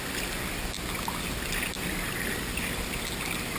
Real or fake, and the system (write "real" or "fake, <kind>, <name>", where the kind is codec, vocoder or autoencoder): real